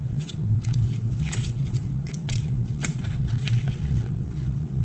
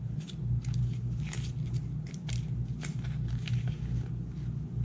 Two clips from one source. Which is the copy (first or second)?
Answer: first